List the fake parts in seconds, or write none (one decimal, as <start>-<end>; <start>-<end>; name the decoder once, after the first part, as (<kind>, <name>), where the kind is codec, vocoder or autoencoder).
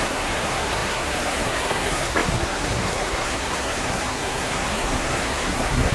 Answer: 0.0-5.9 (codec, SNAC)